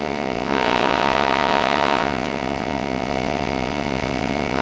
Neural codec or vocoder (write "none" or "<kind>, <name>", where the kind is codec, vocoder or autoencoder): vocoder, WaveNeXt